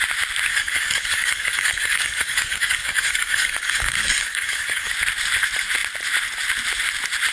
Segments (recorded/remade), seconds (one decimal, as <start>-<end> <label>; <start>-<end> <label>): 0.0-0.5 recorded; 0.5-4.9 remade; 4.9-7.3 recorded

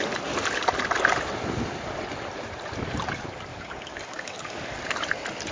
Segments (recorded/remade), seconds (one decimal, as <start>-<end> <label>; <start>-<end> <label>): 0.0-3.5 recorded; 3.5-4.8 remade; 4.8-5.5 recorded

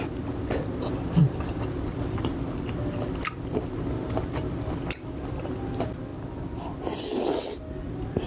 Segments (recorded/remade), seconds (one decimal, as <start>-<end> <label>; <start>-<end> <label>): 0.0-8.3 recorded

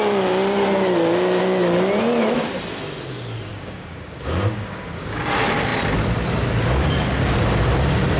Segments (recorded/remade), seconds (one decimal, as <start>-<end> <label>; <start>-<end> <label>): 0.0-3.5 recorded; 3.5-5.2 remade; 5.2-8.2 recorded

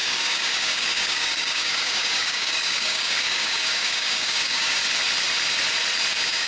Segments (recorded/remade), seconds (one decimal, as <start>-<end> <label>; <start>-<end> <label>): 0.0-4.8 remade; 4.8-6.1 recorded; 6.1-6.5 remade

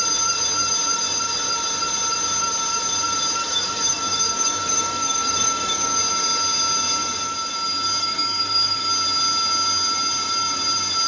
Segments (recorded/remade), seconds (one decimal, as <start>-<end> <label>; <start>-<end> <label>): 0.0-3.4 recorded; 3.4-6.0 remade; 6.0-8.0 recorded; 8.0-8.9 remade; 8.9-11.1 recorded

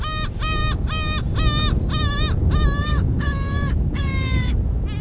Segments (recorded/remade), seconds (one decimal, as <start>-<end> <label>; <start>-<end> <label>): 0.0-2.8 recorded; 2.8-4.6 remade; 4.6-5.0 recorded